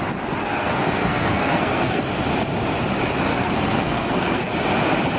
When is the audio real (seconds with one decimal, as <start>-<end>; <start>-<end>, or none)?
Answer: 0.0-0.4; 2.0-3.3; 4.5-5.2